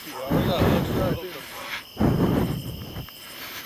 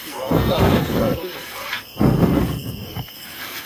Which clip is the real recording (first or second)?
first